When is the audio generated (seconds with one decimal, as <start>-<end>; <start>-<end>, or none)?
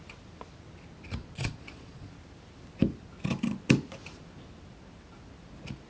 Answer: 1.2-2.1